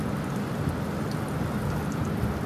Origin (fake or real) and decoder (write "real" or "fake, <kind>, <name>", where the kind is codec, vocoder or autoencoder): real